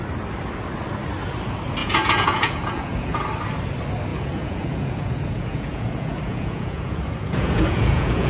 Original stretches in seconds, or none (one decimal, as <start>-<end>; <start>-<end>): 0.0-1.8; 3.2-4.1